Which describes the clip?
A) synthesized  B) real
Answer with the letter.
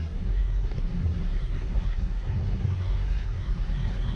A